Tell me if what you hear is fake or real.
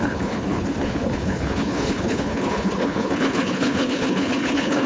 fake